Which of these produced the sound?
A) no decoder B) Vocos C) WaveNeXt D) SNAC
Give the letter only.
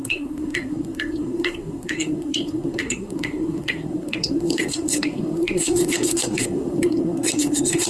D